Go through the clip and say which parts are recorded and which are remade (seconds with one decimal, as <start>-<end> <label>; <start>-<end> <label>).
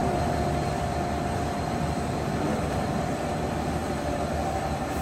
0.0-5.0 recorded